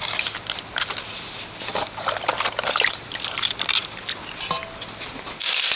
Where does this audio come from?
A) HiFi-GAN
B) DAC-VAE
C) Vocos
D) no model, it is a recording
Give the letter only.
D